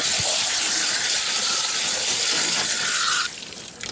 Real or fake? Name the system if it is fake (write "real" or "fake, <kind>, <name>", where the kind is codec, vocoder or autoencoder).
fake, vocoder, BigVGAN v2